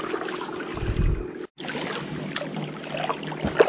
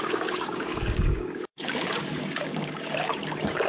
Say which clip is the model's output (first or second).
second